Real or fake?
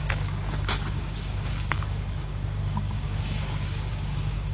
fake